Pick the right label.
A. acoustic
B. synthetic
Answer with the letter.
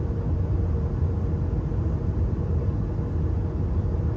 A